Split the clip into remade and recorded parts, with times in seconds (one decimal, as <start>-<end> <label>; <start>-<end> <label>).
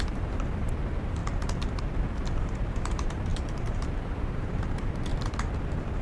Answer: 0.0-1.2 remade; 1.2-2.1 recorded; 2.1-5.1 remade; 5.1-6.0 recorded